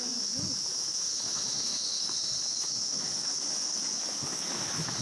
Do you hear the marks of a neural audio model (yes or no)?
yes